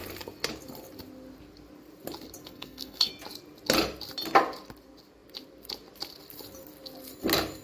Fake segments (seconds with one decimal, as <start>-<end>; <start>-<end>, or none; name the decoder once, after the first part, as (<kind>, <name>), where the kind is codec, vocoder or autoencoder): 2.4-3.1 (codec, SNAC)